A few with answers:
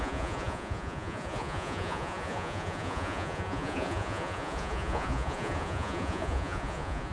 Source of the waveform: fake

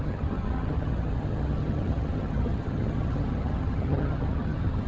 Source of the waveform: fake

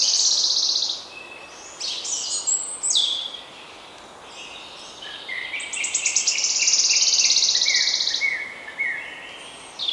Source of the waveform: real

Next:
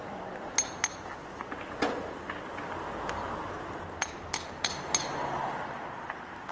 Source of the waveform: real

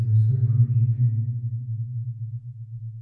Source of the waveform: real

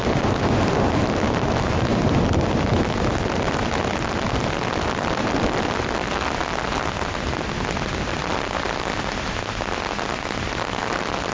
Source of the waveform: real